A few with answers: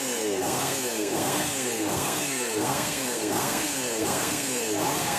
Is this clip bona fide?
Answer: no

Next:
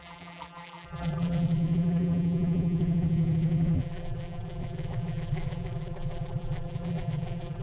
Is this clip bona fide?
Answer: no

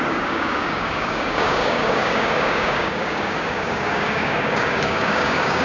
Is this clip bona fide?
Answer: no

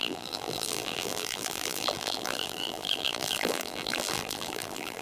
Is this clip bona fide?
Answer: no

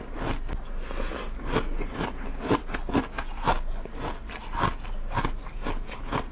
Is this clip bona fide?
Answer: yes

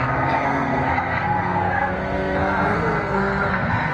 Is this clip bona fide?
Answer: no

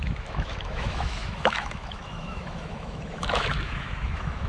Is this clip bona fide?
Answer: no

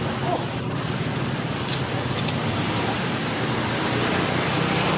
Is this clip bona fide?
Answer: yes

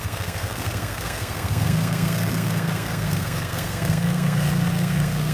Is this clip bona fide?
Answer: no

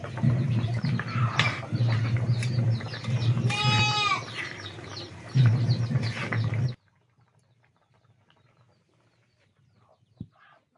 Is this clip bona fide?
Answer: no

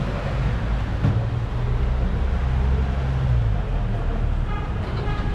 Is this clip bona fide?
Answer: yes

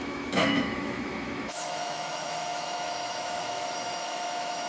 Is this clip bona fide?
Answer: no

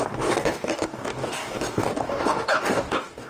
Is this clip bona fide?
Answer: no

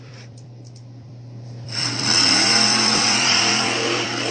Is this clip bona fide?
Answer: no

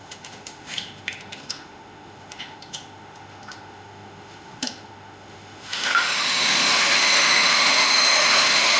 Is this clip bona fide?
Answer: no